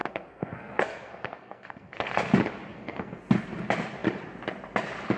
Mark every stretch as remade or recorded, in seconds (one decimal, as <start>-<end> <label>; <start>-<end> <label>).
0.0-2.1 remade; 2.1-2.7 recorded; 2.7-3.2 remade; 3.2-5.2 recorded